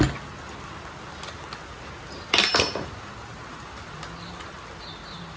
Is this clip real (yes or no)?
yes